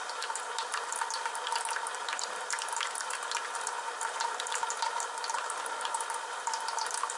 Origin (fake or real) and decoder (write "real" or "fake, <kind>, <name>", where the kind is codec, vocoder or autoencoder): fake, vocoder, BigVGAN v2